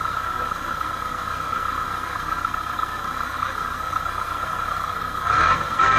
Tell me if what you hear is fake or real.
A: fake